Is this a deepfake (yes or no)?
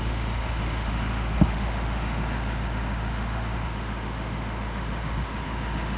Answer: yes